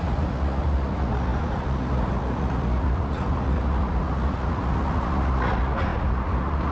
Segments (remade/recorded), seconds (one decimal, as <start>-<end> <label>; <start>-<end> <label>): 0.0-6.7 remade